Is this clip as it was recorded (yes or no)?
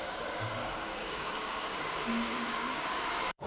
no